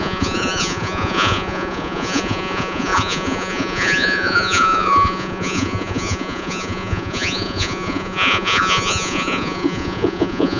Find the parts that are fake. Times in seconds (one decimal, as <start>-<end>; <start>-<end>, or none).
0.0-10.6